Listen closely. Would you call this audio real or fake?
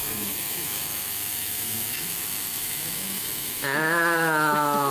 fake